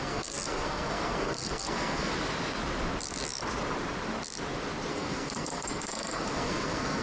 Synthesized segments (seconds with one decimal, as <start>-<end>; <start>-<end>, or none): 0.0-2.1; 4.9-7.0